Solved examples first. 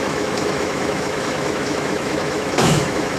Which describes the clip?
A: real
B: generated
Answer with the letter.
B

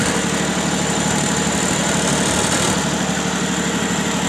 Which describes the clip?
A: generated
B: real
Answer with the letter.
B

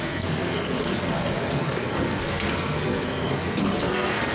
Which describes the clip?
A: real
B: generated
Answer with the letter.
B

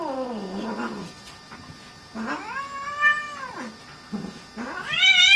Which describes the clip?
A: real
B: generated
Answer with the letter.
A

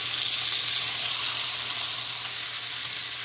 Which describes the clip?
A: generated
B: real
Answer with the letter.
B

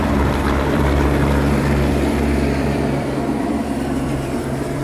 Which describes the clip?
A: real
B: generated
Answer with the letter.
B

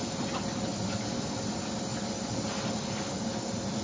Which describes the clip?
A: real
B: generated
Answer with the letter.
A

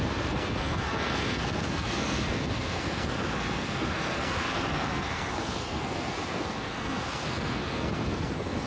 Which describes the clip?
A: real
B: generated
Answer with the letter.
B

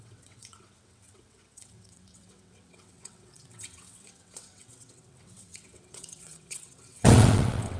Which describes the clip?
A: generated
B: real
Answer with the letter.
A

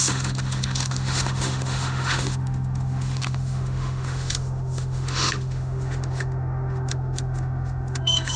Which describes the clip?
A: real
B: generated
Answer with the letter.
B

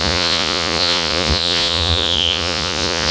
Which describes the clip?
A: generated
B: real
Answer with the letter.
A